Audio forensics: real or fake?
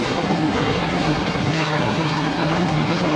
fake